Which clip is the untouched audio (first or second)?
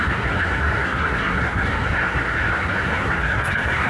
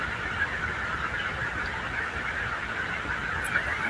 second